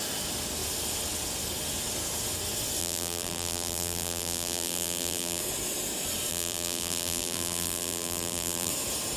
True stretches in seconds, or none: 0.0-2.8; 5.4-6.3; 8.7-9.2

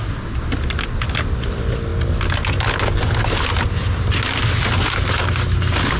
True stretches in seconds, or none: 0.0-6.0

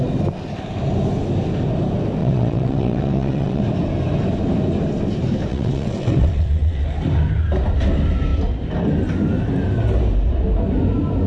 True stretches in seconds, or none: 0.0-2.2; 3.6-5.5; 6.8-11.3